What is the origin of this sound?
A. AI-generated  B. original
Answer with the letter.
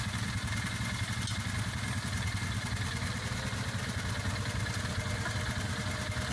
B